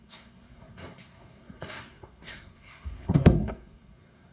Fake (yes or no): yes